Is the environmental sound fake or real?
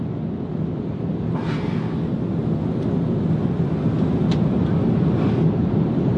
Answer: real